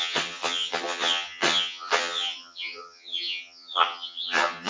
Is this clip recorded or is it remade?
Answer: remade